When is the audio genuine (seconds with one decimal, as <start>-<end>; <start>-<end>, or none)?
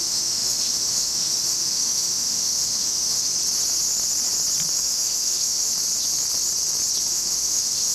3.3-4.7; 5.7-7.1